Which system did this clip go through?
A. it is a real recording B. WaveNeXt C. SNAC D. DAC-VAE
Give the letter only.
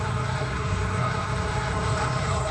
C